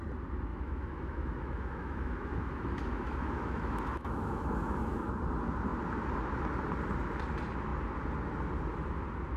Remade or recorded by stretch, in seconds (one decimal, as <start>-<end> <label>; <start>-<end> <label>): 0.0-0.5 recorded; 0.5-5.1 remade; 5.1-9.4 recorded